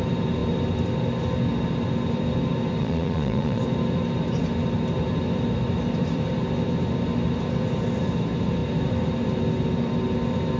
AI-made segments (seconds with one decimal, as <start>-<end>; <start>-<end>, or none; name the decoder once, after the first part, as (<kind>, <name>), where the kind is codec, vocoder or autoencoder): 2.8-3.6 (vocoder, Vocos)

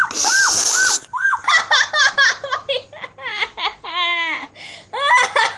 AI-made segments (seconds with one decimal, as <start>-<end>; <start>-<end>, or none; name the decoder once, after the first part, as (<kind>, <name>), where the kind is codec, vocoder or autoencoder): 3.3-4.5 (autoencoder, DAC-VAE)

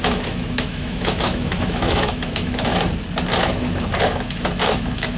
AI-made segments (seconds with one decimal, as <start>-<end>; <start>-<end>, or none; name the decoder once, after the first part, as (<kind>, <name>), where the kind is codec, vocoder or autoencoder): 0.0-2.7 (autoencoder, DAC-VAE); 3.3-5.2

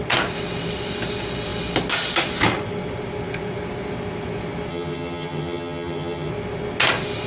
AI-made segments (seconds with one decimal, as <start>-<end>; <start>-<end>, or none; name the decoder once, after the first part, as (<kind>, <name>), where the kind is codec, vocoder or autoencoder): 4.7-6.3 (vocoder, HiFi-GAN)